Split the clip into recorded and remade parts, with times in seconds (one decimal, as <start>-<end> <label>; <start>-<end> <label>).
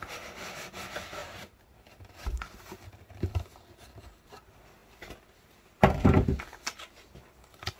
0.0-1.2 recorded; 1.2-4.2 remade; 4.2-7.8 recorded